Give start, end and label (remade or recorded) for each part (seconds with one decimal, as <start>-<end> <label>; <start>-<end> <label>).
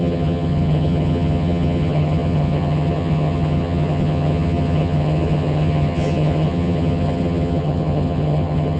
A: 0.0-8.8 remade